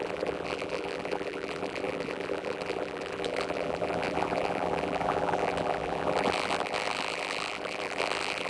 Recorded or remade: remade